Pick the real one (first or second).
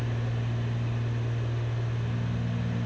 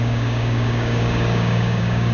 first